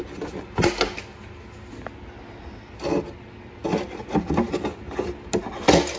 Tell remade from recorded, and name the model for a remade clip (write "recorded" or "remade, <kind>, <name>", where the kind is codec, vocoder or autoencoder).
recorded